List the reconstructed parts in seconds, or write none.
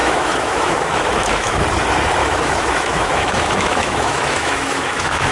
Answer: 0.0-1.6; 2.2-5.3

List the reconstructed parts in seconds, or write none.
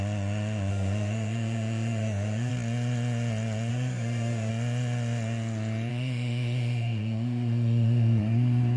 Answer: 0.7-2.5; 3.7-4.5; 5.9-8.2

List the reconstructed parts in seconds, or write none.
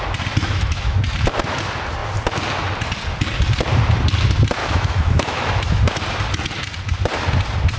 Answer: 0.4-1.0; 4.6-5.8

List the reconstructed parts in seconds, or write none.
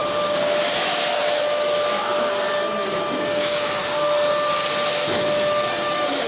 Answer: 0.6-3.8; 4.9-6.3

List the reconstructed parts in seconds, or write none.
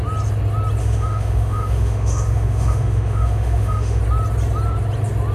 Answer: 0.8-4.0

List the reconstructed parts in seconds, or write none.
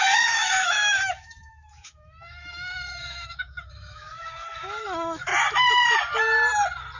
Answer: 0.0-5.3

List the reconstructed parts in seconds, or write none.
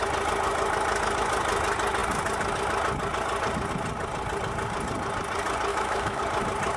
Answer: 5.7-6.2